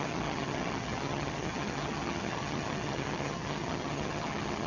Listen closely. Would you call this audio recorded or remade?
remade